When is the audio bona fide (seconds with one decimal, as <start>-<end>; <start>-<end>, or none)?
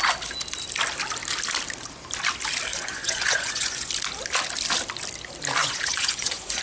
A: 0.0-2.7; 3.9-5.6